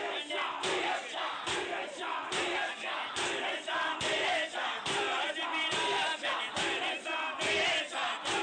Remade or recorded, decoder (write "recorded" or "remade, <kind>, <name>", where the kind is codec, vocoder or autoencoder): recorded